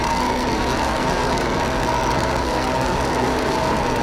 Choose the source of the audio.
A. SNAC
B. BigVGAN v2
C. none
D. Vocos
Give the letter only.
A